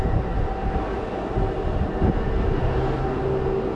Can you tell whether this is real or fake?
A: real